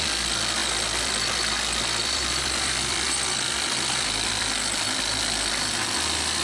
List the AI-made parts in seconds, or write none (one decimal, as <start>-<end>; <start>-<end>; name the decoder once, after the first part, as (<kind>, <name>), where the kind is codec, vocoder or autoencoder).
0.6-4.4 (vocoder, BigVGAN v2)